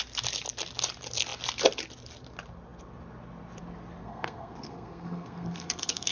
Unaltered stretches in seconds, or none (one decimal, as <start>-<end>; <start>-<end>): 0.0-4.0